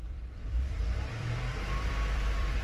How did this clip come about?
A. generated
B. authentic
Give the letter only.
A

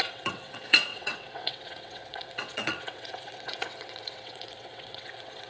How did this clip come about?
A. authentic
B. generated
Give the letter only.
B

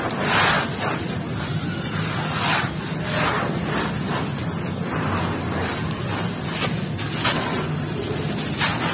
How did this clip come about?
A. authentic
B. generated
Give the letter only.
A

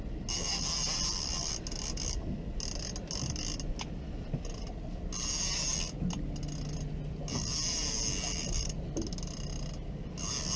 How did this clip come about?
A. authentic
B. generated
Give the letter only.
A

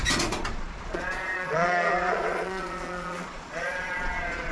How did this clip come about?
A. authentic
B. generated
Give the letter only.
B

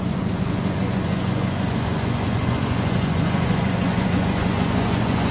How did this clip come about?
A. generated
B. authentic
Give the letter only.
A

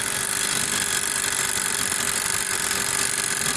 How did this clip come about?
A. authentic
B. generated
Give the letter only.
A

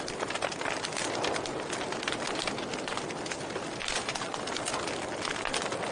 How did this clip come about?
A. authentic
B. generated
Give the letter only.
A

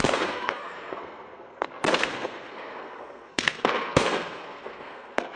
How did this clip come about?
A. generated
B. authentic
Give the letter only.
A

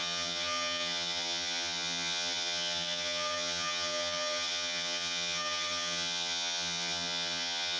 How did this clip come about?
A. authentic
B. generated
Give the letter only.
B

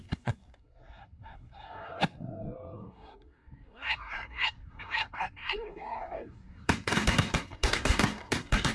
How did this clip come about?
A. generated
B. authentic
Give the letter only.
A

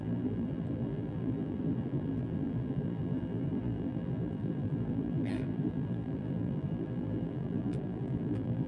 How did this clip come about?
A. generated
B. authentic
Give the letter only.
A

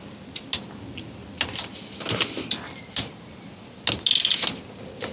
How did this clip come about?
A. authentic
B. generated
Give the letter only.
A